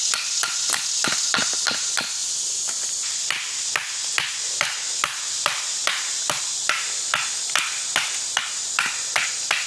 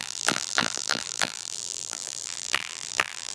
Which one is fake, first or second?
second